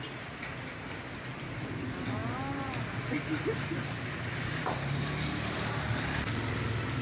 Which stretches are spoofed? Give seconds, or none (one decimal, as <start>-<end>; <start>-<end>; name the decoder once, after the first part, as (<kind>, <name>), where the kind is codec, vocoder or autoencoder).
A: none